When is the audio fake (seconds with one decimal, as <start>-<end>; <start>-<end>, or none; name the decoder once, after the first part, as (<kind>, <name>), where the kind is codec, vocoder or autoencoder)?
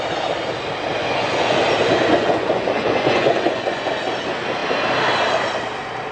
1.0-1.6 (vocoder, Vocos); 2.1-3.9